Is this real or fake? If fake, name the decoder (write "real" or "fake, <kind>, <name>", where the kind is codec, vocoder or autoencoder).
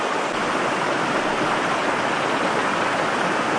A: real